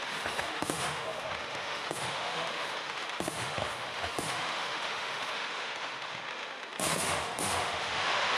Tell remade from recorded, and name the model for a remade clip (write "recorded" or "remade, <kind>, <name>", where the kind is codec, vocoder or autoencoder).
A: remade, autoencoder, DAC-VAE